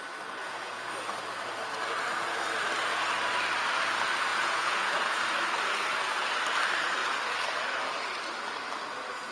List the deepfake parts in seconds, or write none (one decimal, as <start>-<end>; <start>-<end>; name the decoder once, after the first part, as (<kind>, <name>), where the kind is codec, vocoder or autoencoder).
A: 0.4-0.9 (vocoder, Vocos); 4.3-5.2